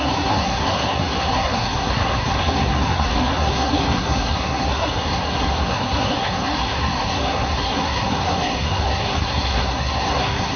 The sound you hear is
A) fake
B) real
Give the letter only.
A